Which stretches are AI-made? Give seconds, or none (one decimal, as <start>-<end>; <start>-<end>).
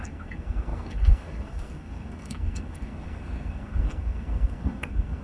0.0-5.2